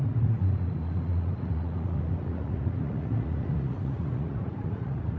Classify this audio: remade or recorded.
remade